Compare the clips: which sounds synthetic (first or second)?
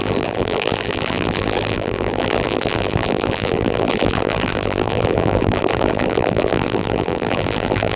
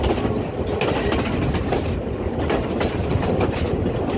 first